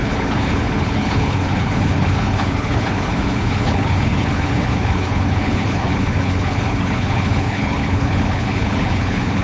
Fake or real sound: fake